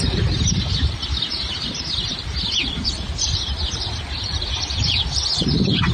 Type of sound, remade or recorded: remade